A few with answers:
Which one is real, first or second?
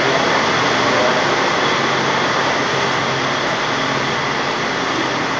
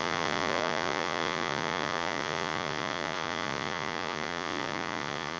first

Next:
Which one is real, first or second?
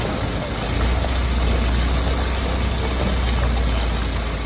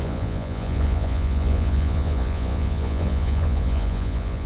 first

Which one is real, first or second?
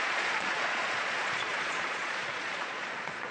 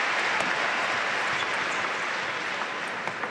second